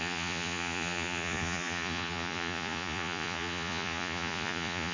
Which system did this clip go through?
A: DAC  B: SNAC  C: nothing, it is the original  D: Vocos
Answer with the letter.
D